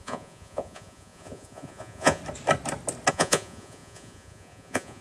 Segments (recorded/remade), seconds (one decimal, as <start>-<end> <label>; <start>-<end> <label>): 0.0-2.2 remade; 2.2-3.1 recorded; 3.1-5.0 remade